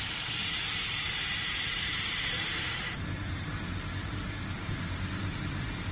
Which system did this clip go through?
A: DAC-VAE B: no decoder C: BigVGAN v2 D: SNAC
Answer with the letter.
C